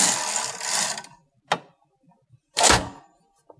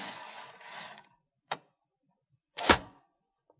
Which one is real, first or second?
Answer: first